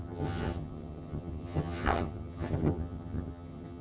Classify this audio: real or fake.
fake